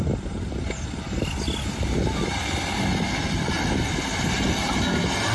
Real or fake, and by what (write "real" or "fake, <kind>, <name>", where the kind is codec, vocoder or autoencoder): real